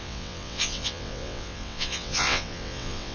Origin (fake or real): fake